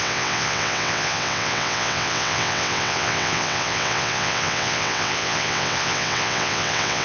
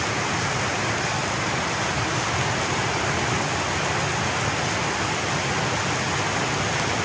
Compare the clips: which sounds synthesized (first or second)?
first